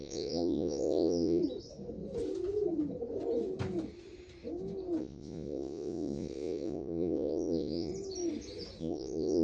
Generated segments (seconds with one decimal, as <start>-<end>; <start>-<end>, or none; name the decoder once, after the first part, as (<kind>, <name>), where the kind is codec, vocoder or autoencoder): 0.0-1.4 (vocoder, Vocos); 5.0-7.9; 8.8-9.4